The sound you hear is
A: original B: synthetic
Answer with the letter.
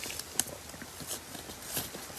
A